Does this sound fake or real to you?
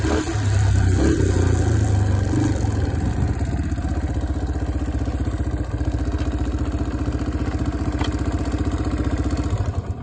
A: real